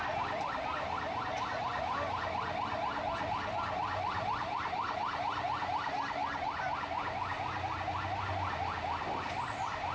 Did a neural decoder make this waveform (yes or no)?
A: no